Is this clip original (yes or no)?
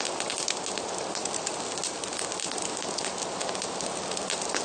yes